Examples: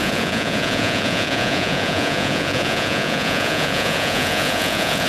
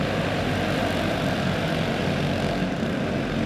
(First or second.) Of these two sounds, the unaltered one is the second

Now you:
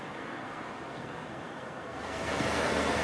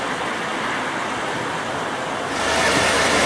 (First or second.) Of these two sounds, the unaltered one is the second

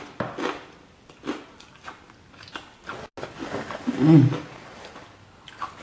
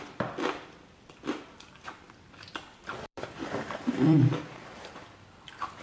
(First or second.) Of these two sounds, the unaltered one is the first